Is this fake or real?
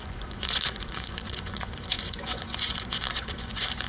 fake